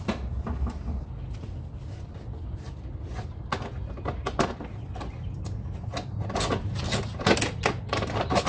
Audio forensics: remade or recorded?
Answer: recorded